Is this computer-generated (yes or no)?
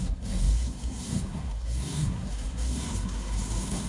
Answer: yes